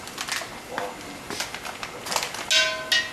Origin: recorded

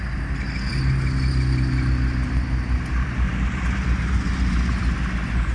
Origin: recorded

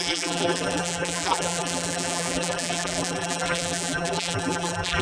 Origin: remade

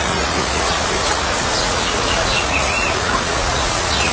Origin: remade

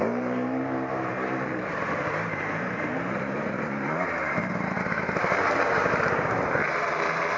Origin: remade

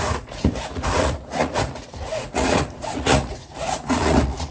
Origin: remade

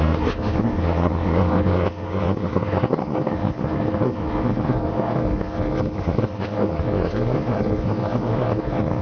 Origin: remade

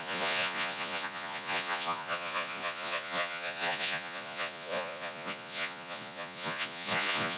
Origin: remade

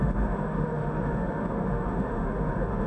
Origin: remade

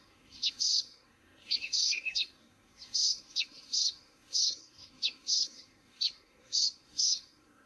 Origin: remade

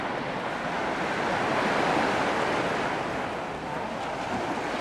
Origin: recorded